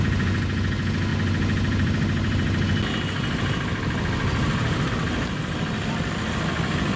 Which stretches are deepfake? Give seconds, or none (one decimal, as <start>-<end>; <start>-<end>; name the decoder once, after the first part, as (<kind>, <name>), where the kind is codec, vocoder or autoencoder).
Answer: none